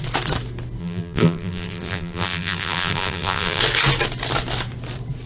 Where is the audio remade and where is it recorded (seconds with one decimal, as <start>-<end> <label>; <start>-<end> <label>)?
0.0-0.8 recorded; 0.8-3.6 remade; 3.6-5.3 recorded